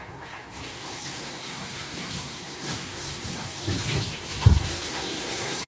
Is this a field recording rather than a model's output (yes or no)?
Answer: no